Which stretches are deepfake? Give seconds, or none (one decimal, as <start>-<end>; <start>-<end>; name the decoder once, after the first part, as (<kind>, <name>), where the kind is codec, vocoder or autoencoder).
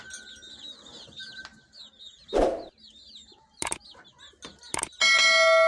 none